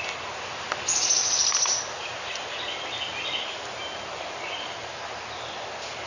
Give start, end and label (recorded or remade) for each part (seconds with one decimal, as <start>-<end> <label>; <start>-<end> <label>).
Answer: 0.0-6.1 recorded